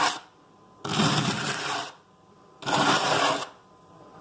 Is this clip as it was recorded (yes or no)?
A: yes